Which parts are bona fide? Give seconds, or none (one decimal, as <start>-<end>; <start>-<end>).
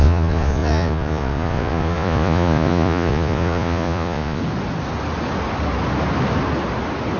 4.4-7.2